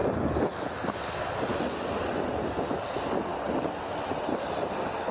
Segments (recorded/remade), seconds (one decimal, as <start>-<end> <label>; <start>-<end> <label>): 0.0-5.1 recorded